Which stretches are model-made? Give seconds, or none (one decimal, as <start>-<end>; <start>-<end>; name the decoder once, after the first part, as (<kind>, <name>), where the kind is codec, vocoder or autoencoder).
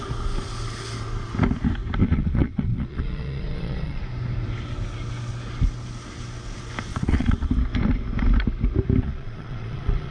2.0-4.0 (vocoder, Vocos); 6.9-7.5; 9.0-10.1